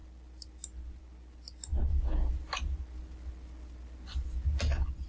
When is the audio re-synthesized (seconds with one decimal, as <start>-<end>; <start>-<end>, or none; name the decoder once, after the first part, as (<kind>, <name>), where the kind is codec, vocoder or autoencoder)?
none